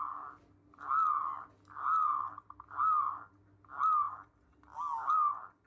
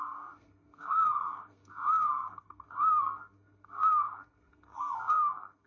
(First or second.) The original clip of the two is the first